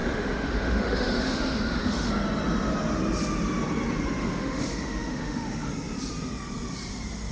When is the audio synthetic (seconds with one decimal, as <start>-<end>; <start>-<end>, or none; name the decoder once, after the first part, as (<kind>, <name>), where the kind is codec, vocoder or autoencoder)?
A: 0.0-2.1 (autoencoder, DAC-VAE); 4.2-5.7